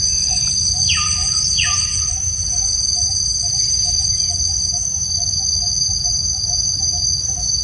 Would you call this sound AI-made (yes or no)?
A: yes